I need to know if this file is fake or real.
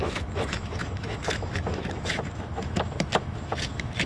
fake